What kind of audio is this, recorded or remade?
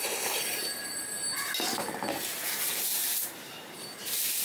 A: remade